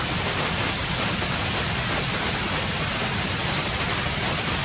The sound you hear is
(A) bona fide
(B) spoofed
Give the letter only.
A